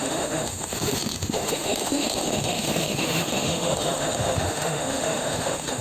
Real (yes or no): no